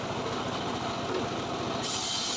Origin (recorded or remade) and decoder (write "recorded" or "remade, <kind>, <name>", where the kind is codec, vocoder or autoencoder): recorded